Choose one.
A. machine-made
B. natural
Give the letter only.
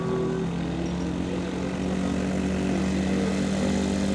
B